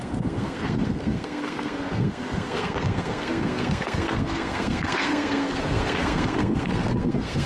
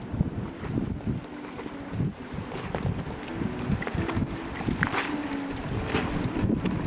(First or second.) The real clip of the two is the second